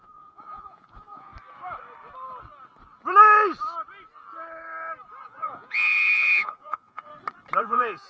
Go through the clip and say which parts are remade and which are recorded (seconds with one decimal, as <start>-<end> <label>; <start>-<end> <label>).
0.0-1.3 remade; 1.3-5.2 recorded; 5.2-7.1 remade; 7.1-7.6 recorded; 7.6-8.1 remade